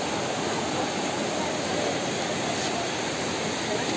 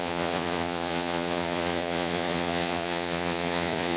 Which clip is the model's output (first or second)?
second